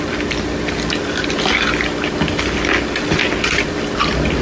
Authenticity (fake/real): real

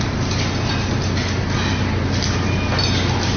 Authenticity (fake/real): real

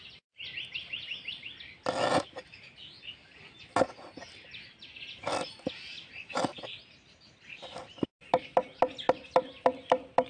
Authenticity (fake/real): real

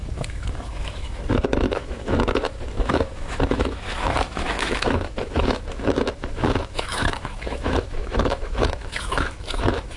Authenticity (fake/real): fake